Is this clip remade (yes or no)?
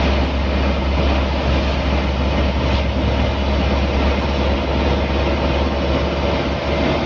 no